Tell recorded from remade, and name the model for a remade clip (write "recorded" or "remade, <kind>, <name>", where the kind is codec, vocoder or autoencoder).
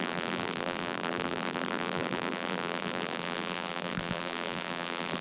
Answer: remade, vocoder, BigVGAN v2